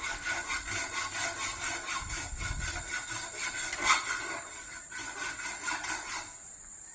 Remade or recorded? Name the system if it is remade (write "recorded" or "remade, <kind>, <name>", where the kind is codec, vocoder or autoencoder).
recorded